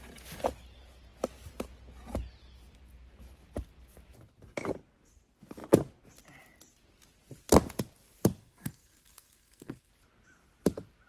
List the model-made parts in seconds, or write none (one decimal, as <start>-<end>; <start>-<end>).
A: 8.4-9.9